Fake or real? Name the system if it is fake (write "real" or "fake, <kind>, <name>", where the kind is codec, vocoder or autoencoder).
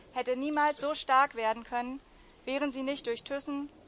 real